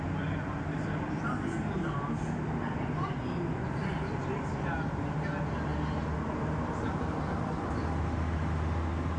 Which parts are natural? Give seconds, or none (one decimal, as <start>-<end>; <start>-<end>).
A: 0.0-9.2